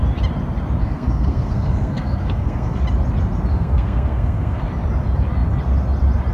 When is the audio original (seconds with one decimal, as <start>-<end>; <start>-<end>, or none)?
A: 0.0-0.8; 2.8-3.5; 4.6-6.3